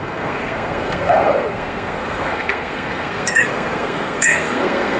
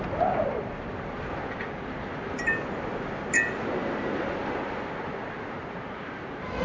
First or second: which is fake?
first